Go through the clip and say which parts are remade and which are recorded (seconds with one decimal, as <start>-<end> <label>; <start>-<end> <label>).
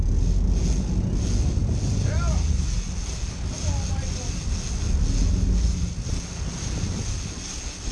0.0-7.9 recorded